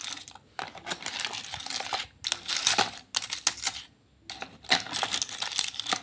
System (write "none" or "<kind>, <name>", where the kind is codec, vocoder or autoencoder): none